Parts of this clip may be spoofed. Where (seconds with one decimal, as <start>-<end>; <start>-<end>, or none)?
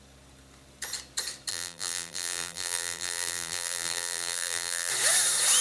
1.5-4.9